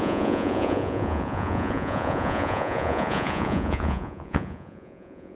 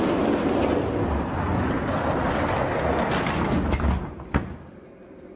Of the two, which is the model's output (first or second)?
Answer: first